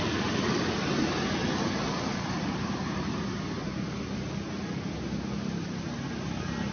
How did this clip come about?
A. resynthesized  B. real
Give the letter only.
B